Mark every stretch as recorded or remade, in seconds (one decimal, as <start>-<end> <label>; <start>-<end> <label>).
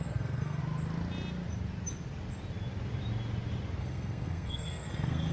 0.0-0.6 remade; 0.6-3.8 recorded; 3.8-5.3 remade